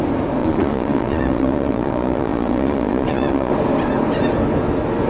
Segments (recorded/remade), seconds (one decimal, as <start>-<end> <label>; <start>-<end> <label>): 0.0-0.4 recorded; 0.4-3.5 remade; 3.5-5.1 recorded